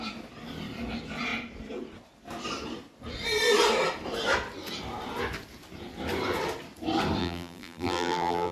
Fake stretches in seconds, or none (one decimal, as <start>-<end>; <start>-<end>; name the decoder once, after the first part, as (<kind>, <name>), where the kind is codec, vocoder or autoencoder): 7.2-8.5 (vocoder, BigVGAN v2)